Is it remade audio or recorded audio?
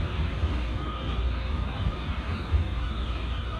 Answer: remade